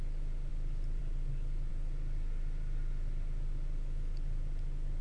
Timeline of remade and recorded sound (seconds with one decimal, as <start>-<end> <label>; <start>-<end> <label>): 0.0-5.0 recorded